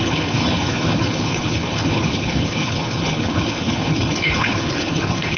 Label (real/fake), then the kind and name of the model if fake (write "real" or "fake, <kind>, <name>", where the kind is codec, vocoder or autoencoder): fake, codec, HILCodec